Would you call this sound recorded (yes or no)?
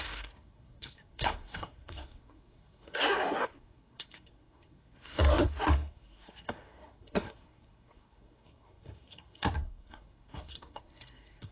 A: no